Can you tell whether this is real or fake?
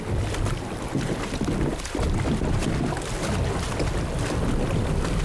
real